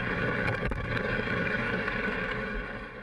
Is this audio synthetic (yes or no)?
yes